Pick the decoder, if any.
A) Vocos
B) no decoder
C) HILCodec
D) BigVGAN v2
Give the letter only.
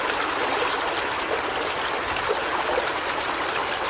B